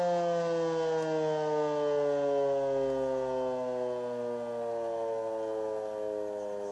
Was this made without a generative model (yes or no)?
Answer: yes